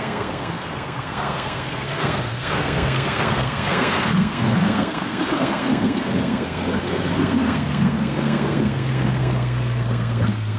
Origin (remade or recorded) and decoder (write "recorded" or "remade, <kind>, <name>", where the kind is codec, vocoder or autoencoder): remade, codec, SNAC